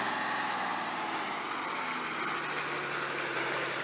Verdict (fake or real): real